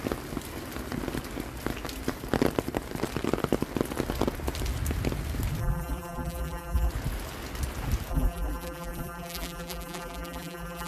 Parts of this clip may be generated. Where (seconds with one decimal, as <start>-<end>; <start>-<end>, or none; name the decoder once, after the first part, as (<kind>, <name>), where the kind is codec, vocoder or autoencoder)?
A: 5.6-6.9 (vocoder, BigVGAN v2); 8.1-10.9